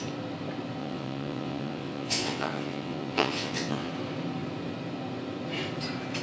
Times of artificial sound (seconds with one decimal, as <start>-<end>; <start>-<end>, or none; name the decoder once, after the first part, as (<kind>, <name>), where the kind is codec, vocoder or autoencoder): 0.8-3.9 (vocoder, WaveNeXt)